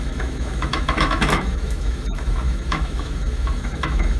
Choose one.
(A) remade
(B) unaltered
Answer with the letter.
A